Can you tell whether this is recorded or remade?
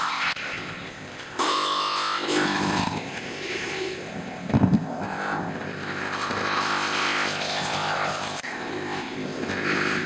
remade